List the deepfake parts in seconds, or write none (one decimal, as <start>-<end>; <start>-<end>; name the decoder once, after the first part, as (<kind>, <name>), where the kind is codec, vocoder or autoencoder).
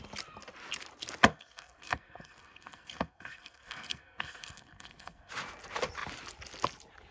1.3-5.3 (codec, SNAC)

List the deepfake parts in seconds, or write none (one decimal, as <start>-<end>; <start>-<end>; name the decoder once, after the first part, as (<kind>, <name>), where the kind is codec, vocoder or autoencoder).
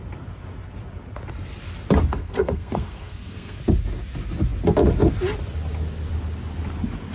2.1-3.6 (codec, SNAC)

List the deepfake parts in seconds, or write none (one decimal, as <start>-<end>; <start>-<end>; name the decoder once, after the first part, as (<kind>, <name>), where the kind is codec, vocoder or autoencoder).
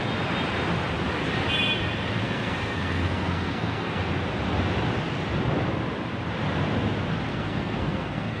2.2-4.1 (codec, SNAC); 7.3-8.4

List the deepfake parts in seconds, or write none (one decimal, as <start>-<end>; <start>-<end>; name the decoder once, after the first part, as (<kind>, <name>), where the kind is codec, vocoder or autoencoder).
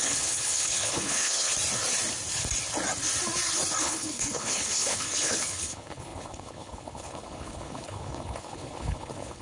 0.0-1.5 (codec, HILCodec); 3.8-9.4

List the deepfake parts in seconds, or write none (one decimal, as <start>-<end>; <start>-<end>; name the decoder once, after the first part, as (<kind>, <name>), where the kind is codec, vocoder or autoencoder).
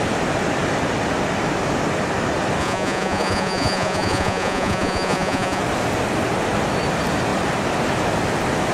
2.6-5.6 (vocoder, Vocos)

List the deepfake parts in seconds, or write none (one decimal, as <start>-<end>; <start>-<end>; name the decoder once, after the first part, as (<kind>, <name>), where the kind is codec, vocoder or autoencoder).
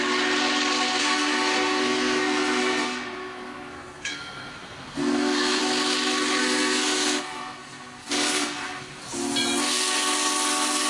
1.0-5.6 (codec, SNAC); 6.4-9.0